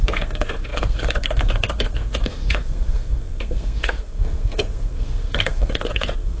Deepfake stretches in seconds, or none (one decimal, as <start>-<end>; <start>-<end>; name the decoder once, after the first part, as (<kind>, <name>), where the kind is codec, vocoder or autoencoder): 0.0-6.4 (codec, SNAC)